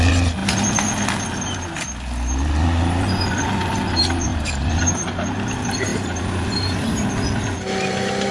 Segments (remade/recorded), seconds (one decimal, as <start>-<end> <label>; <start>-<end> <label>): 0.0-4.3 recorded; 4.3-4.8 remade; 4.8-5.9 recorded; 5.9-7.1 remade; 7.1-8.3 recorded